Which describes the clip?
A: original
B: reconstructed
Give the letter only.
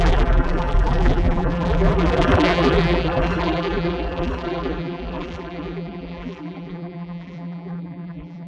B